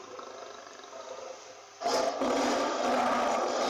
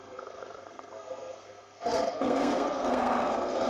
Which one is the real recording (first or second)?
first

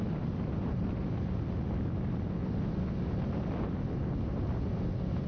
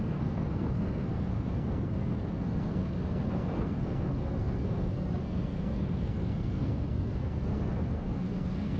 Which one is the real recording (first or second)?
first